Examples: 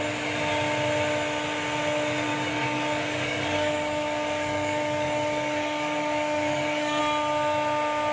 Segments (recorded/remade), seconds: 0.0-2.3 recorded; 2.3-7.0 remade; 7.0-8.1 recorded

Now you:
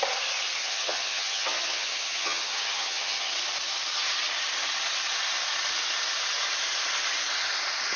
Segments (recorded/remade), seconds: 0.0-0.6 recorded; 0.6-3.3 remade; 3.3-8.0 recorded

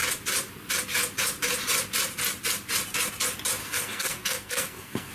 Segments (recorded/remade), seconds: 0.0-3.6 recorded; 3.6-5.1 remade

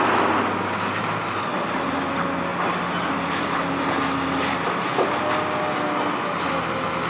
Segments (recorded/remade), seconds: 0.0-7.1 recorded

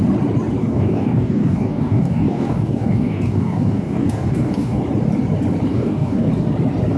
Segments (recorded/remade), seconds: 0.0-0.6 recorded; 0.6-4.8 remade; 4.8-5.7 recorded; 5.7-6.3 remade; 6.3-7.0 recorded

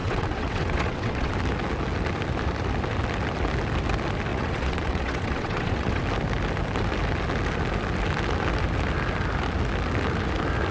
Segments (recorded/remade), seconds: 0.0-1.3 remade; 1.3-4.3 recorded; 4.3-6.0 remade; 6.0-10.7 recorded